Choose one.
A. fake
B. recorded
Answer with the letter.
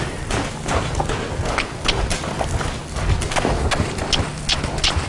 B